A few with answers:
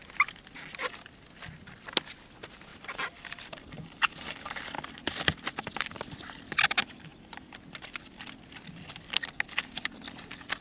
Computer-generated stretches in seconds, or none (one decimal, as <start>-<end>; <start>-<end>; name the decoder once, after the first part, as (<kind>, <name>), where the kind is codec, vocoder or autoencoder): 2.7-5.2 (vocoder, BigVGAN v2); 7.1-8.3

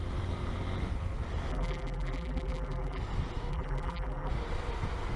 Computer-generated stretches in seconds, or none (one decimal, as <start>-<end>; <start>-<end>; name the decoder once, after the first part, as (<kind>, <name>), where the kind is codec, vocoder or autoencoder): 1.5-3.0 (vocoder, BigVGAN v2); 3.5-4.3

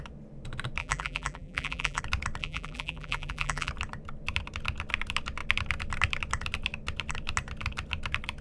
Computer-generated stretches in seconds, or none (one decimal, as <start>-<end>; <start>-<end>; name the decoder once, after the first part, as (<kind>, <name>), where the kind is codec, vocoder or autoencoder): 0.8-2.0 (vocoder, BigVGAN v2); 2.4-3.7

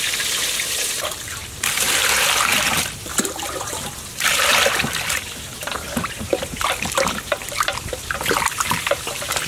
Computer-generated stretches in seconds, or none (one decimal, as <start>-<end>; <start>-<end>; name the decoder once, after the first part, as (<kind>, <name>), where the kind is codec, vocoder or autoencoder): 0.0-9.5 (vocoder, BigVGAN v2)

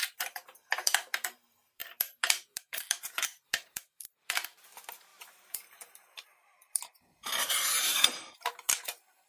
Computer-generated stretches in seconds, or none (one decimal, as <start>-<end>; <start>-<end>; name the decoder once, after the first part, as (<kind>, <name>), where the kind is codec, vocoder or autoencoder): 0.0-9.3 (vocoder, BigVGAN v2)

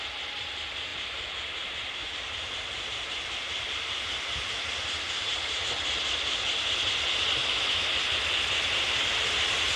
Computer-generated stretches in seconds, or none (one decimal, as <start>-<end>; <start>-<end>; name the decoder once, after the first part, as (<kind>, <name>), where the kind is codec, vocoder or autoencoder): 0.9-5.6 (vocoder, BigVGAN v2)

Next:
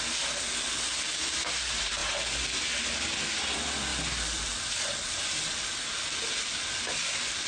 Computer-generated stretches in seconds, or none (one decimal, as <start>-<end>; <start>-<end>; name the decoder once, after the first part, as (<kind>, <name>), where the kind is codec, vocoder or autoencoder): 3.9-5.2 (vocoder, BigVGAN v2)